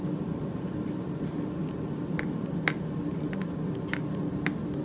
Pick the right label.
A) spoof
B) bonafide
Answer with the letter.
B